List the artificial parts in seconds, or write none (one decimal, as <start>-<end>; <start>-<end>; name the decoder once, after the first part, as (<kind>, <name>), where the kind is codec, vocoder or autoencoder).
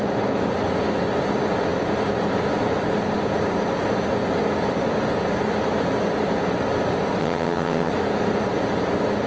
7.2-7.9 (vocoder, HiFi-GAN)